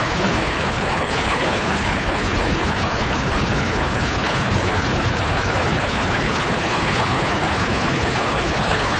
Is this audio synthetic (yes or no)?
yes